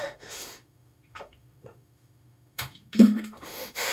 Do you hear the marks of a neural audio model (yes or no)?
yes